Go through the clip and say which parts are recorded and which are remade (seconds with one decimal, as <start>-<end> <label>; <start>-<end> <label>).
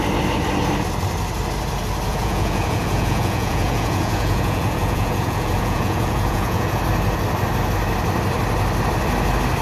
0.0-2.1 recorded; 2.1-6.8 remade; 6.8-9.6 recorded